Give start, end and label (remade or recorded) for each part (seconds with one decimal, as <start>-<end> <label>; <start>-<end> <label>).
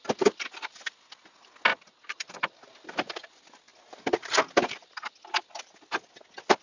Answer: 0.0-1.7 recorded; 1.7-2.7 remade; 2.7-6.6 recorded